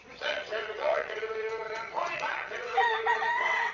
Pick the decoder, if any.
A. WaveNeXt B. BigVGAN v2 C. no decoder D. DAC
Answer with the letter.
A